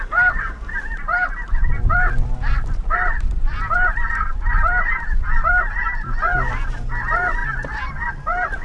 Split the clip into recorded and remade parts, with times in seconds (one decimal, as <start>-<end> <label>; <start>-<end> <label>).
0.0-8.6 recorded